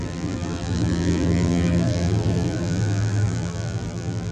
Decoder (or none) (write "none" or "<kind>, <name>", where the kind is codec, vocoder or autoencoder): vocoder, BigVGAN v2